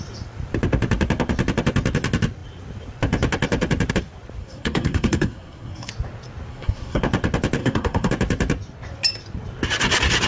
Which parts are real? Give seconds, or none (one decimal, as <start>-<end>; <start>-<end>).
0.0-4.4; 5.9-6.5; 7.0-7.6; 8.1-10.3